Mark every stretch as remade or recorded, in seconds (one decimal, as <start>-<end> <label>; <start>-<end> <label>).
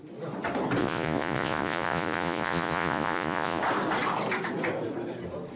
0.0-0.8 recorded; 0.8-3.6 remade; 3.6-5.6 recorded